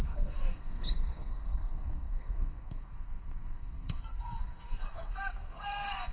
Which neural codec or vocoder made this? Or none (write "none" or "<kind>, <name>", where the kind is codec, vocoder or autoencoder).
codec, SNAC